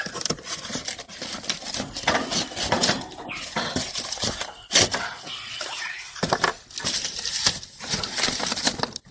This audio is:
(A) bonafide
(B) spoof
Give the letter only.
A